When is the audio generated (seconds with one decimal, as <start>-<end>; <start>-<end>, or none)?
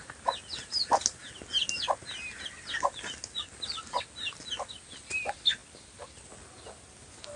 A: none